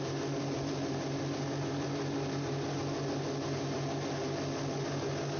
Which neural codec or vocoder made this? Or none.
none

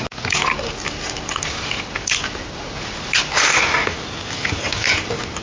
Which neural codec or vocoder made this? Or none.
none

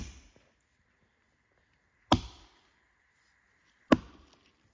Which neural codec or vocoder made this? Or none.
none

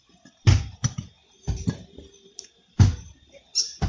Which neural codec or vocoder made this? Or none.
none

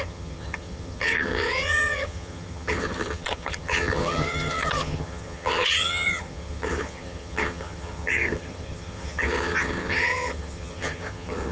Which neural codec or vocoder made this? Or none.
vocoder, HiFi-GAN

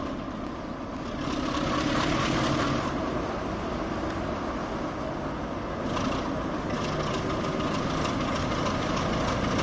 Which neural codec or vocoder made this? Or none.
none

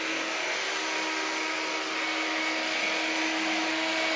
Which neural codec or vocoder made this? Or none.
none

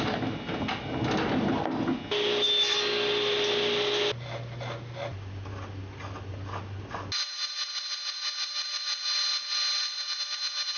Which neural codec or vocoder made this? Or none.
none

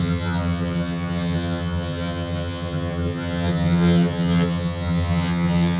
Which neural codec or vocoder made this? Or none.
vocoder, HiFi-GAN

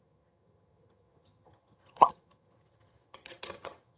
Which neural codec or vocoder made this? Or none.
vocoder, HiFi-GAN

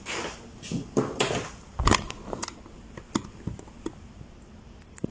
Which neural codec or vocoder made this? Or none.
none